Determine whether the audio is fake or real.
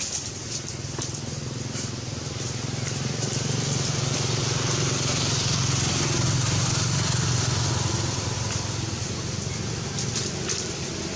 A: real